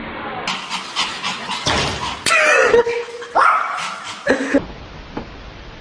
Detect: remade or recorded recorded